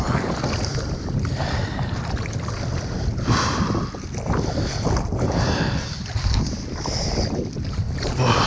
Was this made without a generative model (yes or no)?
yes